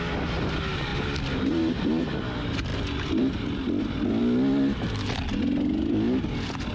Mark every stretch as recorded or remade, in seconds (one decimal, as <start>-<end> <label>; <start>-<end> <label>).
0.0-6.7 recorded